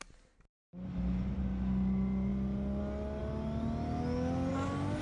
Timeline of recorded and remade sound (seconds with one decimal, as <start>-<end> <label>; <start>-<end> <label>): 0.0-5.0 recorded